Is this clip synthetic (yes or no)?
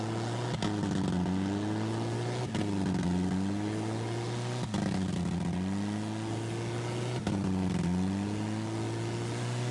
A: no